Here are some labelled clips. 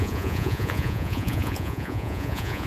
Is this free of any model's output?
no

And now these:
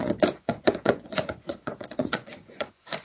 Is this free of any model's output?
no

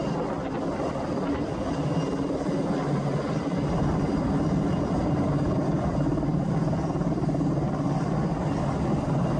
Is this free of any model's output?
yes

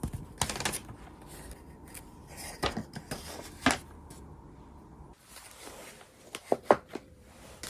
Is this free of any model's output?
yes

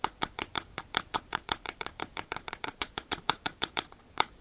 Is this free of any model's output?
no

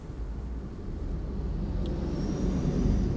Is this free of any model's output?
yes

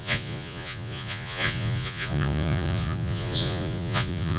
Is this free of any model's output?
no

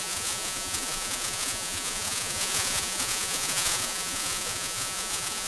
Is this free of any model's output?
no